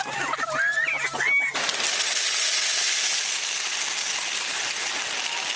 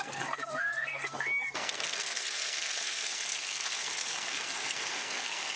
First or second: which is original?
first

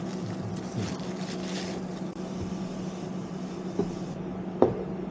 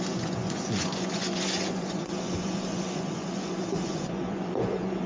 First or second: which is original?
first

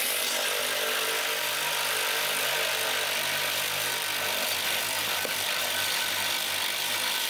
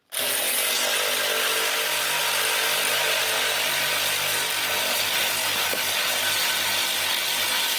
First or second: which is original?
second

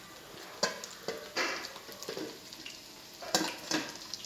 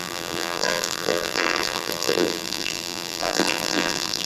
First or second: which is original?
first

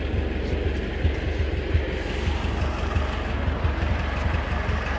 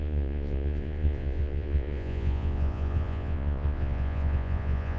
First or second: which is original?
first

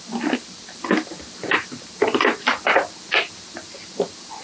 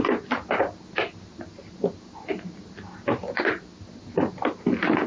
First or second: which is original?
second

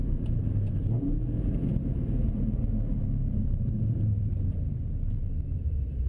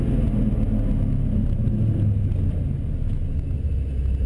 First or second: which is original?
second